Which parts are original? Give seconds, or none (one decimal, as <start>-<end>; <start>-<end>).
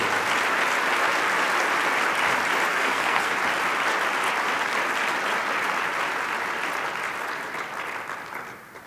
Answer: 0.0-2.7; 3.3-8.9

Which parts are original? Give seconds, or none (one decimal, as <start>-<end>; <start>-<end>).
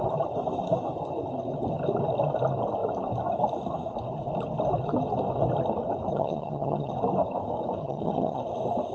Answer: 0.0-6.1; 6.9-7.8; 8.4-8.9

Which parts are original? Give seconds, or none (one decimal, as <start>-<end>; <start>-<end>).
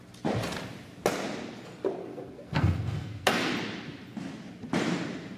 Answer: 0.0-2.0; 3.5-5.4